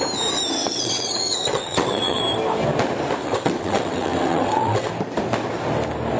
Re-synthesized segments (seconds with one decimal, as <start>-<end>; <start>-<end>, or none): 0.6-2.2; 3.2-4.9